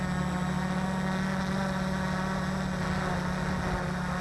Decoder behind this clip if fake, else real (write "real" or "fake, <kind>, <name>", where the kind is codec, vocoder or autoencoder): real